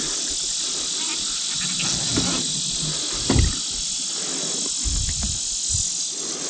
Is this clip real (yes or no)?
yes